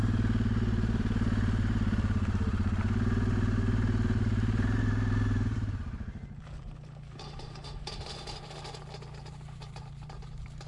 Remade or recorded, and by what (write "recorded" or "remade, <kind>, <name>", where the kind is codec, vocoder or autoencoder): remade, vocoder, BigVGAN v2